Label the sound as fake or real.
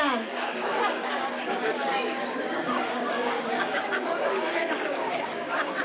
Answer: fake